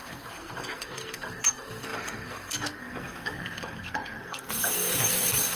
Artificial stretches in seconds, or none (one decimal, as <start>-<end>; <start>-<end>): 0.0-5.6

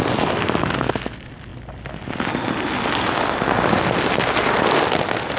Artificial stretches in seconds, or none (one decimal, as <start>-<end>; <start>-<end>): none